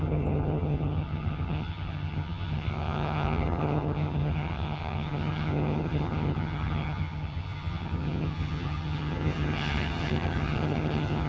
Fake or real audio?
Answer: fake